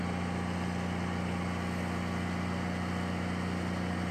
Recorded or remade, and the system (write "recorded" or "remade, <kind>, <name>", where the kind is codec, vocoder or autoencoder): recorded